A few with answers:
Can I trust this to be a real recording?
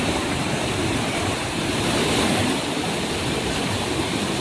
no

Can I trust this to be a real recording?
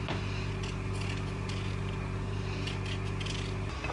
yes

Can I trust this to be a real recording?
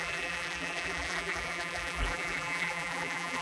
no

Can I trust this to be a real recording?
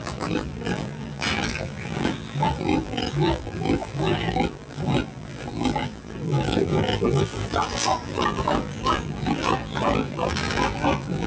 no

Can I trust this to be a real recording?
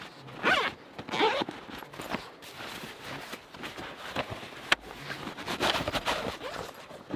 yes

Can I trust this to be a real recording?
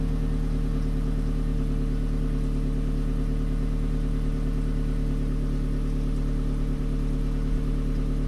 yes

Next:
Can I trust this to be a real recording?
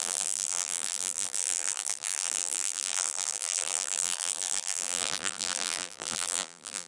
no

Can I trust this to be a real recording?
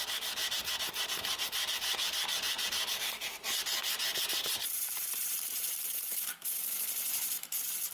no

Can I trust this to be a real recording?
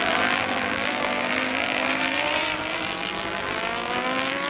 no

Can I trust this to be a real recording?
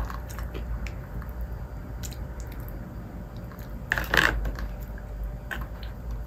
yes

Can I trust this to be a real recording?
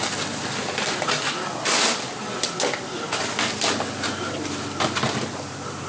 yes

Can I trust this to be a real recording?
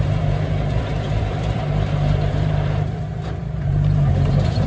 no